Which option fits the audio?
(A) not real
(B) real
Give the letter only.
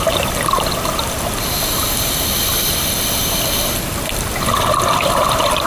B